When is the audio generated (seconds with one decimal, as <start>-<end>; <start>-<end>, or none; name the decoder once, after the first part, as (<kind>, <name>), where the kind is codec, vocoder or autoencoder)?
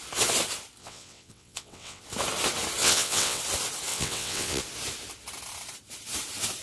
0.8-2.0 (vocoder, WaveNeXt); 2.8-3.4; 3.9-4.6